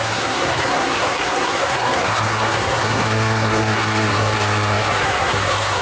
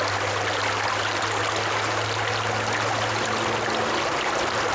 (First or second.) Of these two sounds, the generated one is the first